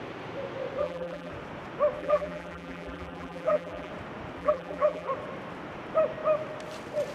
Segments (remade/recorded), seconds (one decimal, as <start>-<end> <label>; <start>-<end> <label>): 0.0-0.8 recorded; 0.8-1.3 remade; 1.3-2.0 recorded; 2.0-3.9 remade; 3.9-4.4 recorded; 4.4-5.1 remade; 5.1-7.1 recorded